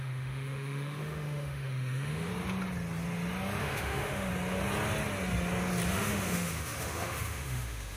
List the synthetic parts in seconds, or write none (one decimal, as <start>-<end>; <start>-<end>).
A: 0.0-2.3; 3.6-4.3; 5.9-8.0